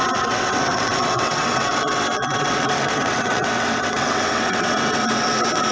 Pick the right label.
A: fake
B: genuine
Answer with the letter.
A